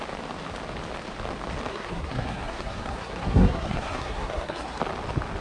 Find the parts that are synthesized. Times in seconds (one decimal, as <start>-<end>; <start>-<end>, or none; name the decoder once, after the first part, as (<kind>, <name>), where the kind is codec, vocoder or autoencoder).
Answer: 1.7-4.8 (codec, SNAC)